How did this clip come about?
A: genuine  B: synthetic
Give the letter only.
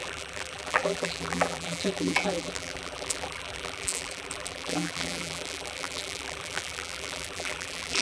B